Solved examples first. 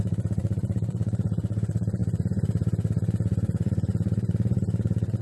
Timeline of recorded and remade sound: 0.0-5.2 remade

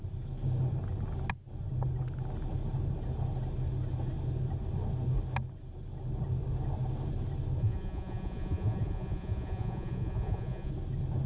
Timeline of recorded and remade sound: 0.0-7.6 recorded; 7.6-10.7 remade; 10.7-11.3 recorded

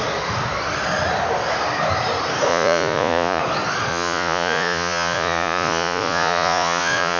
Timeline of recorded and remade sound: 0.0-2.5 recorded; 2.5-3.4 remade; 3.4-3.9 recorded; 3.9-7.2 remade

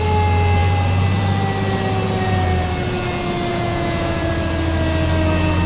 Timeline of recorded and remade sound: 0.0-3.5 recorded; 3.5-4.3 remade; 4.3-5.7 recorded